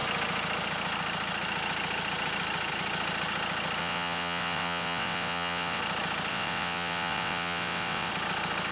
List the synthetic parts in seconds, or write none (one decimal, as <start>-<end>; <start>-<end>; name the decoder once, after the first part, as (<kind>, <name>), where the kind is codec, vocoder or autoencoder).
3.8-5.8 (vocoder, WaveNeXt); 6.3-8.1